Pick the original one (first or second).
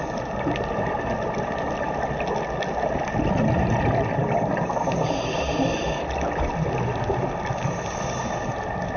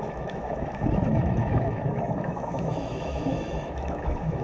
first